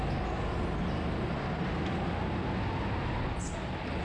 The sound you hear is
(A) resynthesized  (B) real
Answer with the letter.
B